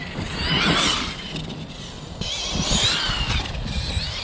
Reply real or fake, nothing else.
real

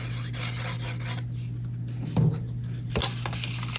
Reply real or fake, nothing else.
real